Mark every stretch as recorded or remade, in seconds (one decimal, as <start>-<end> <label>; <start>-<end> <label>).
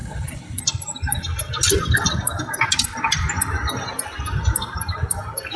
0.0-0.6 remade; 0.6-5.6 recorded